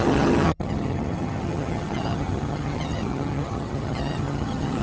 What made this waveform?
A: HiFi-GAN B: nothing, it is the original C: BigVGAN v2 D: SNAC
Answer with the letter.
A